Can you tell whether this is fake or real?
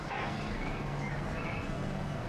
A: fake